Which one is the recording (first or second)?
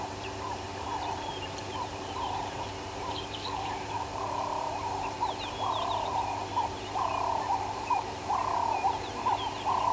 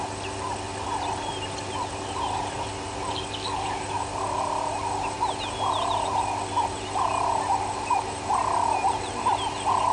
second